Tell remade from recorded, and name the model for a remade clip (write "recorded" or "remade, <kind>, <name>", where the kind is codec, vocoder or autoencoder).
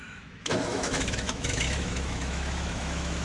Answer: remade, autoencoder, DAC-VAE